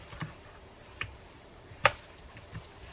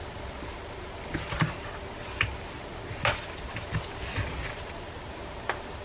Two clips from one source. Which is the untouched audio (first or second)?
second